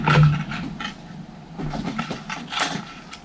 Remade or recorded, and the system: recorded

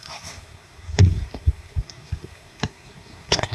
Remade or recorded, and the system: remade, codec, SNAC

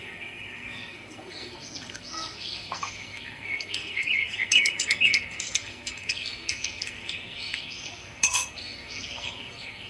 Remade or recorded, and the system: remade, codec, SNAC